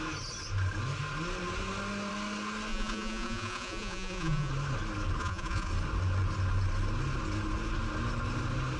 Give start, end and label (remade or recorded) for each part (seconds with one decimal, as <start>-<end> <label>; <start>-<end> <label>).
0.0-2.7 recorded; 2.7-4.5 remade; 4.5-5.2 recorded; 5.2-5.7 remade; 5.7-8.8 recorded